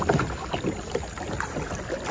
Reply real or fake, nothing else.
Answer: real